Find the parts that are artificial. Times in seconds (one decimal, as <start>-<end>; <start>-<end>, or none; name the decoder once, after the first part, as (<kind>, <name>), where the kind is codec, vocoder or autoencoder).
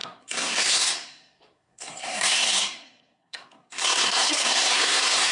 0.0-5.3 (codec, SNAC)